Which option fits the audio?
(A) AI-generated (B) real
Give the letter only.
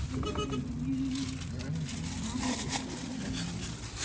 B